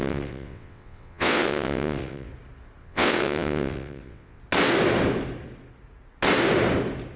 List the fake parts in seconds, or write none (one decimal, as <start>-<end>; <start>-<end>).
0.0-2.3; 2.8-4.4